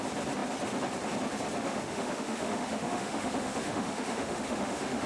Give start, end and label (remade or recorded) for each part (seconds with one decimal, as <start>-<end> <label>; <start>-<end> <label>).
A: 0.0-1.6 recorded; 1.6-5.1 remade